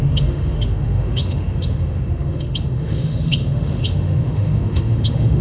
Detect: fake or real fake